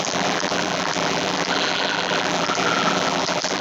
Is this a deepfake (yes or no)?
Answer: yes